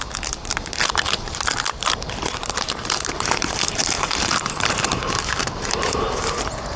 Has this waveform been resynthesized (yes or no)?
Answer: yes